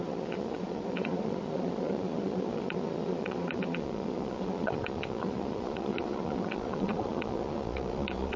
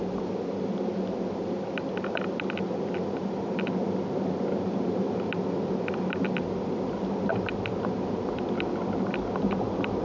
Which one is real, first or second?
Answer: second